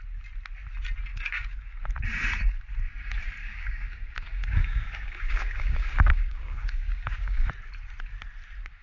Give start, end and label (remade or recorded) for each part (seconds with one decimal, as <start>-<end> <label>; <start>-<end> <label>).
0.0-1.1 recorded; 1.1-1.8 remade; 1.8-3.4 recorded; 3.4-7.5 remade; 7.5-8.8 recorded